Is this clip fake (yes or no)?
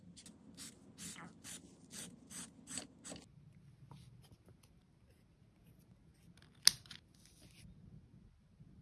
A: no